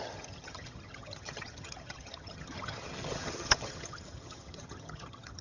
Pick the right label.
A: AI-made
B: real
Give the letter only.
A